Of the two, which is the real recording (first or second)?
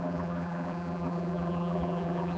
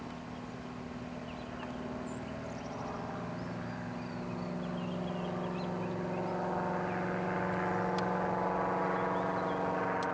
second